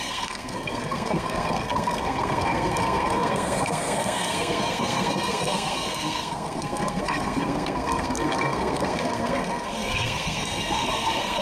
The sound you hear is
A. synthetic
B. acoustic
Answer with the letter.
A